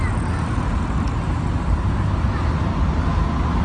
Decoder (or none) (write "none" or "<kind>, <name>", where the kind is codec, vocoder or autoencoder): none